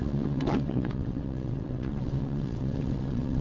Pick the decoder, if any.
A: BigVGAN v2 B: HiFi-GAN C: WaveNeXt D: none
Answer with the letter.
C